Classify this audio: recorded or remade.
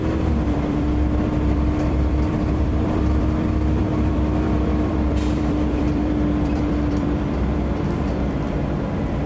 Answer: remade